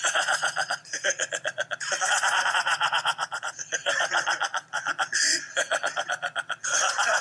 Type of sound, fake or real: fake